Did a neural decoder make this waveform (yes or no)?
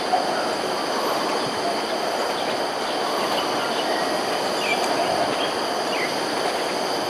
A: no